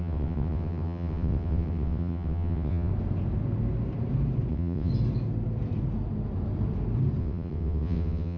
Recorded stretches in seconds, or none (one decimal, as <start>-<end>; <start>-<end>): 2.9-4.5; 4.9-7.2